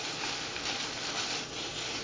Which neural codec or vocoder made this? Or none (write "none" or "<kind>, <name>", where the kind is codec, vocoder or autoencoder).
none